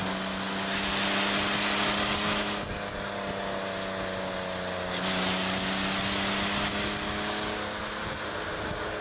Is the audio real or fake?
real